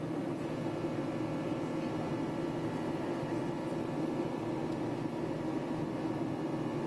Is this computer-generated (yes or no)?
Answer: no